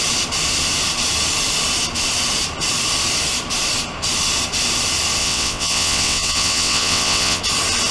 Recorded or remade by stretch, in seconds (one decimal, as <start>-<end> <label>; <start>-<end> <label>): 0.0-5.2 recorded; 5.2-7.4 remade; 7.4-7.9 recorded